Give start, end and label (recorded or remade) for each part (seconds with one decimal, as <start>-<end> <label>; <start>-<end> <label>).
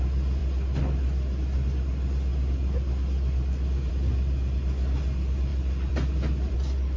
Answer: 0.0-5.5 recorded; 5.5-6.5 remade; 6.5-7.0 recorded